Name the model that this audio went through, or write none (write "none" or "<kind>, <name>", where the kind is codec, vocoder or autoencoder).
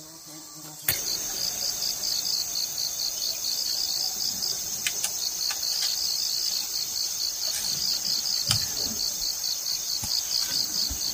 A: vocoder, BigVGAN v2